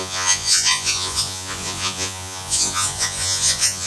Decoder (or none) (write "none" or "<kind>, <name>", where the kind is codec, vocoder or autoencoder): vocoder, Vocos